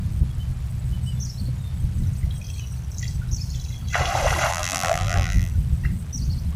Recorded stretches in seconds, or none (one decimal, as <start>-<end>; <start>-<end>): 0.0-4.5; 5.5-6.6